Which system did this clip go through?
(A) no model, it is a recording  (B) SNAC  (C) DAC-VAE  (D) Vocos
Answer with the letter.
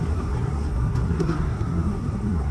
B